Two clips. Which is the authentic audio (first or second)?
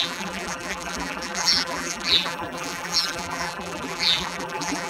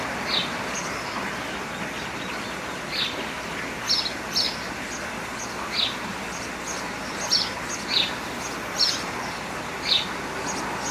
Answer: second